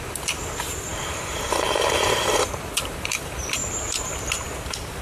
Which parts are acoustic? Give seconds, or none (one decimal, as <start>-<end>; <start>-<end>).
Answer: 3.6-4.1